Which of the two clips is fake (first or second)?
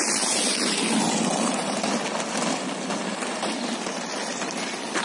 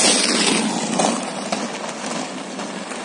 first